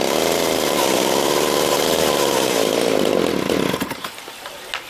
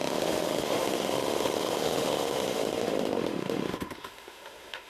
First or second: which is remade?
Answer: second